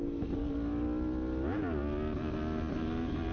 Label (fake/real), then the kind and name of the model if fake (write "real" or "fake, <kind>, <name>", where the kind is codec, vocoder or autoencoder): real